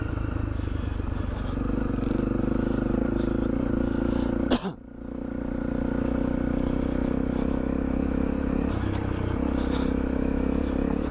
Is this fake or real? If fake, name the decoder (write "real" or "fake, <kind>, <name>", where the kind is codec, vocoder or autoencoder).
real